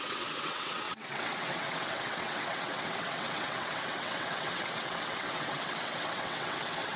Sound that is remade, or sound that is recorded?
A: remade